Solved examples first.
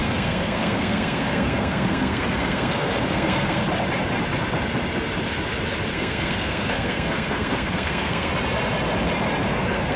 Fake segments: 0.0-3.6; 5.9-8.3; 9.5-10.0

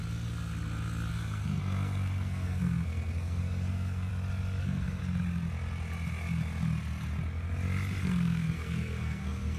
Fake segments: 1.1-4.1; 4.6-5.0; 8.0-9.6

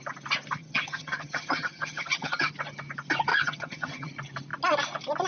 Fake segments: 0.6-2.5; 3.3-4.1

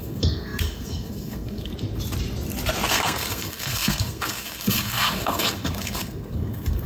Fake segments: 0.0-1.7; 2.9-6.9

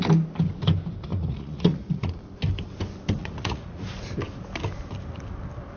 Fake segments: 1.1-2.2; 3.2-3.8

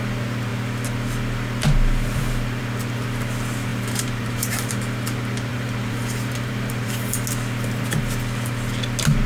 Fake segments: 3.7-4.7; 5.5-6.9

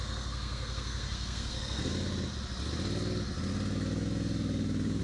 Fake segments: 0.0-1.9